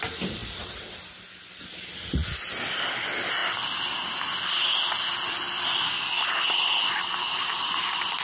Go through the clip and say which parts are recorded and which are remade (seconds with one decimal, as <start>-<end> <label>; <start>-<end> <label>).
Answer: 0.0-8.2 recorded